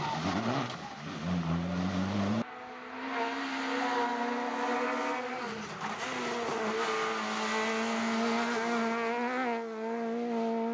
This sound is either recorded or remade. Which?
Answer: recorded